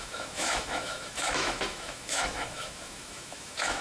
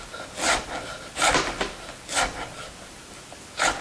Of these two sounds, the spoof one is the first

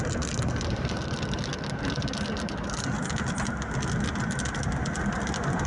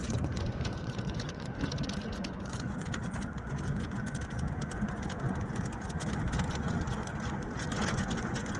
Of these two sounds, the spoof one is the second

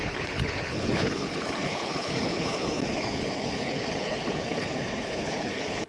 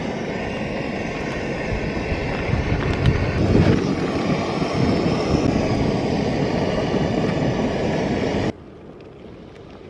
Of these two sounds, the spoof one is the first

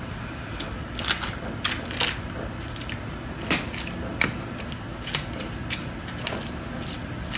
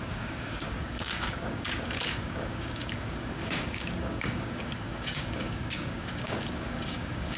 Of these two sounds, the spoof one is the second